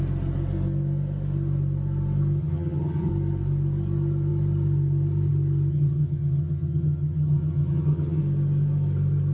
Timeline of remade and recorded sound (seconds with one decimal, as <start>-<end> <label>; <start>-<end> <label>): 0.0-2.4 recorded; 2.4-3.1 remade; 3.1-5.7 recorded; 5.7-8.2 remade; 8.2-9.3 recorded